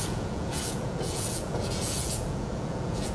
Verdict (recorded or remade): remade